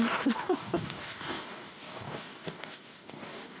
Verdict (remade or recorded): remade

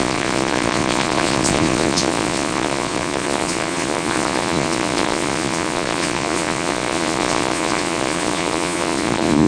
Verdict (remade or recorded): remade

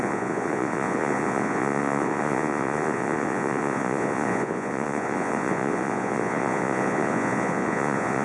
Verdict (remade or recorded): remade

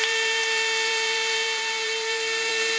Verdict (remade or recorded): remade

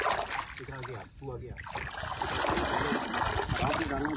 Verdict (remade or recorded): recorded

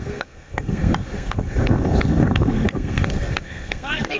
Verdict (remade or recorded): remade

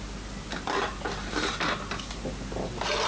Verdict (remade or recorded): recorded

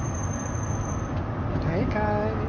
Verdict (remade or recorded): recorded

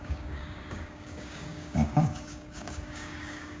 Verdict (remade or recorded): remade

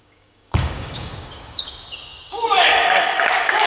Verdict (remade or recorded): remade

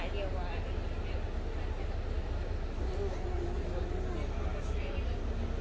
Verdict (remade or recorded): recorded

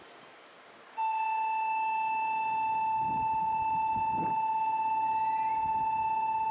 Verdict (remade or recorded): recorded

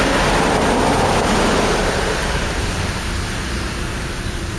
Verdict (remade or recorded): recorded